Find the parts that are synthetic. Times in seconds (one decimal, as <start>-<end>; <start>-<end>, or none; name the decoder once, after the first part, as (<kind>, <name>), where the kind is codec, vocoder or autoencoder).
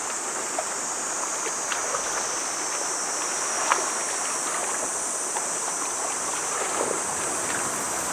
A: 4.6-7.0 (vocoder, BigVGAN v2)